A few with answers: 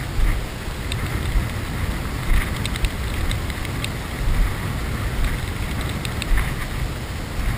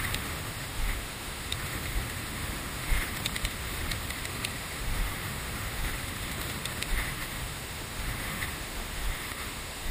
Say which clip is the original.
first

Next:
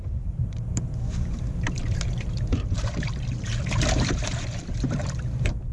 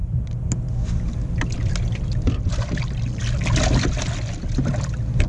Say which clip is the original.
second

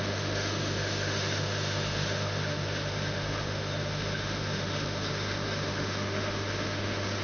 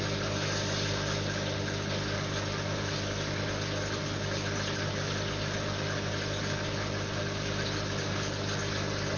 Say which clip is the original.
second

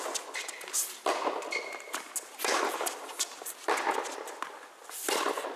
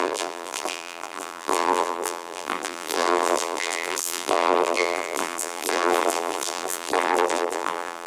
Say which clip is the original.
first